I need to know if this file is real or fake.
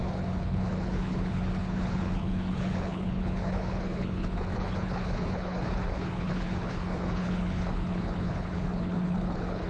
fake